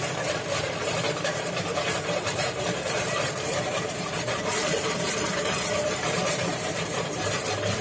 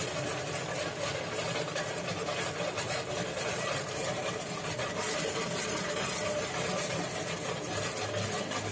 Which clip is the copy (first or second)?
first